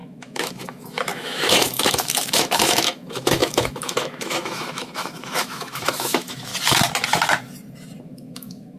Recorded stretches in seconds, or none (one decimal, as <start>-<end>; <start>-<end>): 6.5-8.0